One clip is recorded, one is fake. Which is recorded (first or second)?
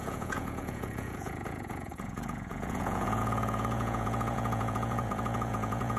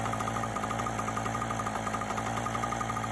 second